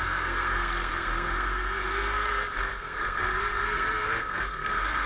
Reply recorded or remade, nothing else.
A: remade